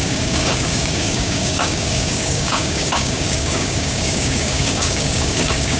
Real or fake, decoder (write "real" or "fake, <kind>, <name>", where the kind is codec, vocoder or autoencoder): fake, codec, DAC